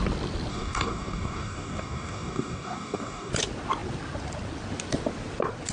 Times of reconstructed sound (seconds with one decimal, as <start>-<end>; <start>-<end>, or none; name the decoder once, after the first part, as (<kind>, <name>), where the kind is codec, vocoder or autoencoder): 0.5-3.3 (codec, DAC)